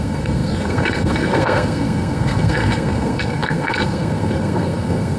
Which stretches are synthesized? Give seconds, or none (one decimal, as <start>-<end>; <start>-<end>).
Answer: 0.0-5.2